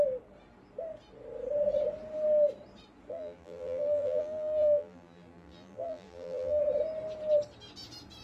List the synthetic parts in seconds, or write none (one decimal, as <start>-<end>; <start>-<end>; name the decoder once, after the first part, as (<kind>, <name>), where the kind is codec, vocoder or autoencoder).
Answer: 3.1-6.6 (vocoder, BigVGAN v2)